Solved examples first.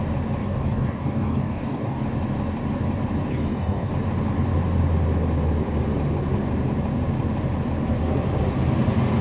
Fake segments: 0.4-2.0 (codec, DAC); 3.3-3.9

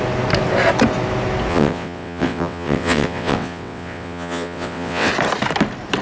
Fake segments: 1.5-5.1 (vocoder, WaveNeXt)

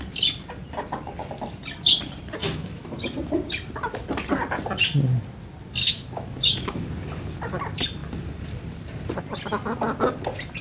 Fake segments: 2.4-2.9 (autoencoder, DAC-VAE); 5.8-6.9

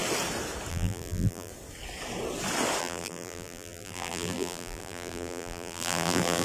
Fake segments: 0.7-1.5 (vocoder, BigVGAN v2); 2.8-6.4

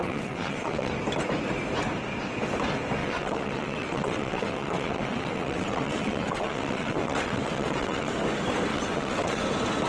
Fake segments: 0.0-0.9 (vocoder, WaveNeXt); 3.0-8.1; 8.7-9.4

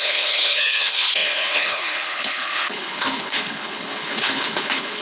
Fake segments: 0.0-5.0 (codec, HILCodec)

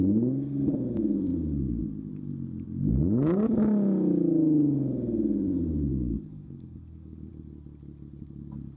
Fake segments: 5.9-7.3 (codec, DAC)

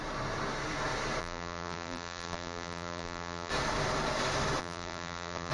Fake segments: 1.2-3.5 (vocoder, BigVGAN v2); 4.6-5.5